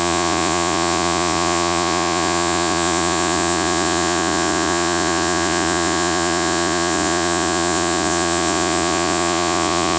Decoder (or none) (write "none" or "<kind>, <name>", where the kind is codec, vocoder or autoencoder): vocoder, Vocos